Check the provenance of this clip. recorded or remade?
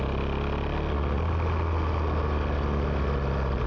recorded